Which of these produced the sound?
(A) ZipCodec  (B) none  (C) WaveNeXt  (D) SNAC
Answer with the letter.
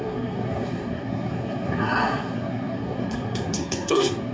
D